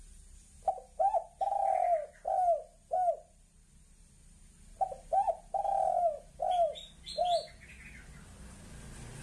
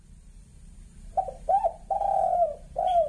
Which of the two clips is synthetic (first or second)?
second